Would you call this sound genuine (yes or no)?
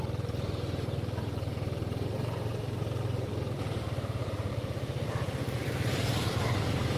no